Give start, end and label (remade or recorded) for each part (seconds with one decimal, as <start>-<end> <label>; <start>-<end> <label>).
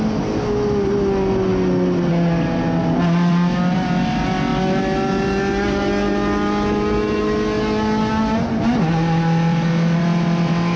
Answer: 0.0-10.8 recorded